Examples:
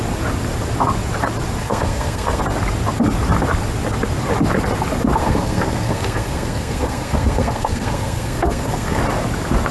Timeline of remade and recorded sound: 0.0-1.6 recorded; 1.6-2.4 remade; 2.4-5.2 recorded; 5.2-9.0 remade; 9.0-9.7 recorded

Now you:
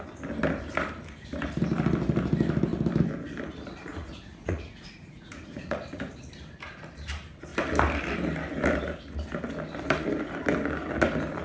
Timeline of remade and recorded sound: 0.0-3.9 recorded; 3.9-6.0 remade; 6.0-11.4 recorded

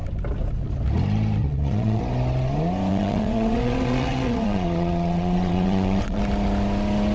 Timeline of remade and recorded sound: 0.0-1.4 recorded; 1.4-2.0 remade; 2.0-2.9 recorded; 2.9-6.2 remade; 6.2-7.1 recorded

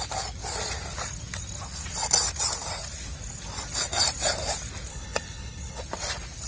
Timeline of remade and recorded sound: 0.0-4.9 recorded; 4.9-5.8 remade; 5.8-6.5 recorded

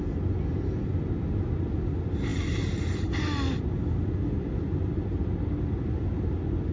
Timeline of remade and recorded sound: 0.0-6.7 recorded

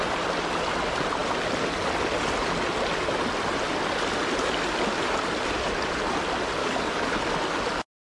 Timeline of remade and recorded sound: 0.0-6.6 recorded; 6.6-7.2 remade; 7.2-8.0 recorded

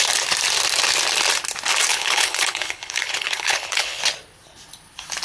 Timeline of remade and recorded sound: 0.0-1.9 recorded; 1.9-4.0 remade; 4.0-5.2 recorded